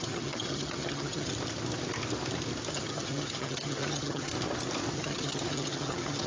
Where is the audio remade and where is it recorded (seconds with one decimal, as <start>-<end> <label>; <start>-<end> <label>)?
0.0-1.3 remade; 1.3-2.7 recorded; 2.7-4.3 remade; 4.3-4.9 recorded; 4.9-6.3 remade